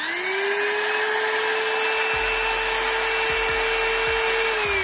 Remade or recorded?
recorded